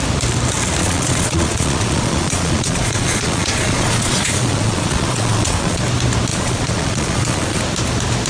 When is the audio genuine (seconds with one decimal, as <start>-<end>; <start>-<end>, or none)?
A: 0.0-0.8; 5.8-6.3; 7.6-8.3